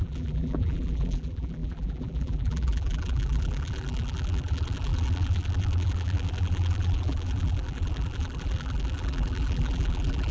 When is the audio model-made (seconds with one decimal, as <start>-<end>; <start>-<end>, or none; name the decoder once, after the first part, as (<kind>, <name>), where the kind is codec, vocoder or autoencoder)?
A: 0.0-10.3 (vocoder, BigVGAN v2)

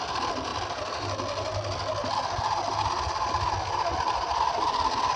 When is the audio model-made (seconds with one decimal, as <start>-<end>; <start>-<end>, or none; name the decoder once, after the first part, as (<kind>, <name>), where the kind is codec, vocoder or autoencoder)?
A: 0.5-2.1 (vocoder, BigVGAN v2)

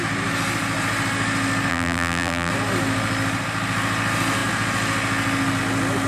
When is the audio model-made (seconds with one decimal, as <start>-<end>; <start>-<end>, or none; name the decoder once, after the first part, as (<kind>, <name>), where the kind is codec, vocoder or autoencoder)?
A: 1.7-2.5 (vocoder, BigVGAN v2)

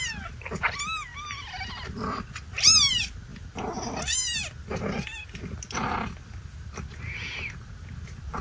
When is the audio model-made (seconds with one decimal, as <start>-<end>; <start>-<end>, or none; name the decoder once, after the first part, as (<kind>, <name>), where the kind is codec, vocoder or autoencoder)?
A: none

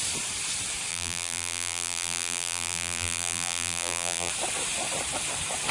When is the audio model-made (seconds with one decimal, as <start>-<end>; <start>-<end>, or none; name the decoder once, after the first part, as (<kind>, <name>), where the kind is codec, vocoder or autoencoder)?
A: 0.9-4.3 (vocoder, BigVGAN v2)

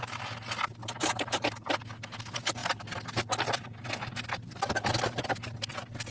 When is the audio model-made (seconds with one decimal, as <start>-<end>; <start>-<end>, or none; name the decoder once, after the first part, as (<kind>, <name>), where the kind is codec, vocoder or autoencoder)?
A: none

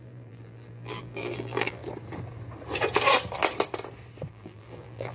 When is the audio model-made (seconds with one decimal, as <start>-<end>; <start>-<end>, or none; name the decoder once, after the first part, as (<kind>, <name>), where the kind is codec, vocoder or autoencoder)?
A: 0.0-1.8 (vocoder, BigVGAN v2); 4.3-5.1

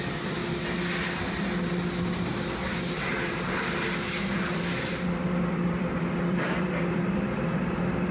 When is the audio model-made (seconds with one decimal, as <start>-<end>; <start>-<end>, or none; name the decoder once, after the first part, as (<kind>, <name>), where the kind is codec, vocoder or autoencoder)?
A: 0.0-0.4 (vocoder, BigVGAN v2); 2.5-8.1